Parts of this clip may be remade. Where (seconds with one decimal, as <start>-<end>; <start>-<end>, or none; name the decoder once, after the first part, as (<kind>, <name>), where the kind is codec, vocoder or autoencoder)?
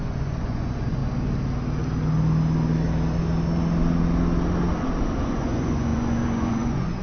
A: 0.0-1.0 (vocoder, Vocos); 5.2-7.0